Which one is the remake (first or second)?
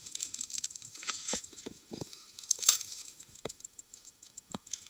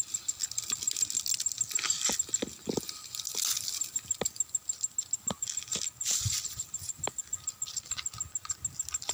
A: first